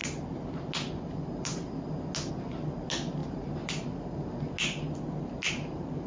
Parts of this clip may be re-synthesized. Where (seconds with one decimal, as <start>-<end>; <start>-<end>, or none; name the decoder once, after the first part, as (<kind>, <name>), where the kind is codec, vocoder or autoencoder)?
none